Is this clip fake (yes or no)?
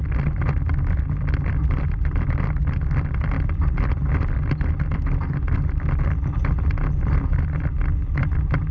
no